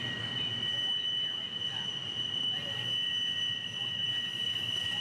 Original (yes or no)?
yes